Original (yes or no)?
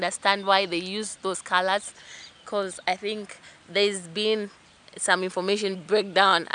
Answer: yes